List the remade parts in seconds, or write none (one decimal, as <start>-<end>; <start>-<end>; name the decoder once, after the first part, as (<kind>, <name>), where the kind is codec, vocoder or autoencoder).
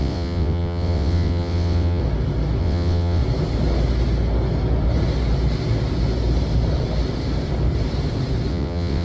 0.0-2.0 (vocoder, WaveNeXt); 2.6-3.2; 8.5-9.0